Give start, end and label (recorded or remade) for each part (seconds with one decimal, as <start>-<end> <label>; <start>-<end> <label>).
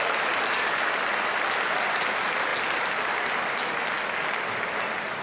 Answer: 0.0-5.2 recorded